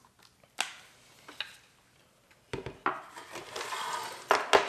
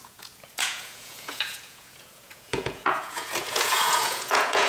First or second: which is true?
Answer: first